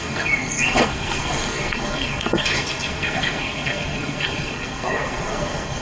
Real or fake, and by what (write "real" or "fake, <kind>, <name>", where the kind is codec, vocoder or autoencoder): fake, codec, SNAC